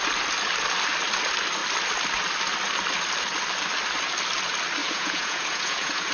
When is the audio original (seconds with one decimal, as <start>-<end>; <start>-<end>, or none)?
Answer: 0.0-4.8